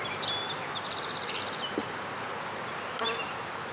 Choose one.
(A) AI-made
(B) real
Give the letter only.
B